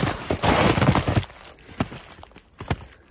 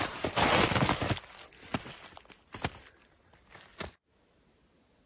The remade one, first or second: first